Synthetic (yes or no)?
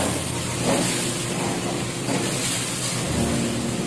no